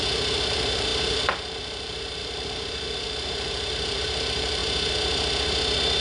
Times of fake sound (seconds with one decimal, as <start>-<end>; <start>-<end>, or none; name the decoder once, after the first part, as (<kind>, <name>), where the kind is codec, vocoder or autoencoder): 0.0-4.6 (vocoder, BigVGAN v2)